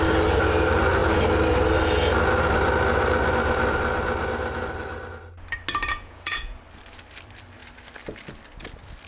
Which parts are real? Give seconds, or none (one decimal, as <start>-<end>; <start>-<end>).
0.0-5.9; 6.6-9.1